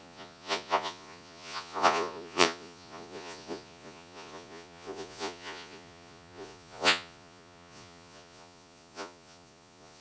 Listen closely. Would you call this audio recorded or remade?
remade